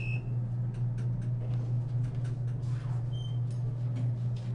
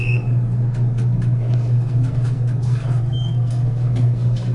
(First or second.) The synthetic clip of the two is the second